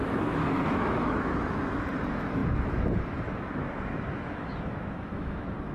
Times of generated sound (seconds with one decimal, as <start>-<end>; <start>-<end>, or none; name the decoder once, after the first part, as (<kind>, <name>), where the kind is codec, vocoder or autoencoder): 0.0-5.7 (autoencoder, DAC-VAE)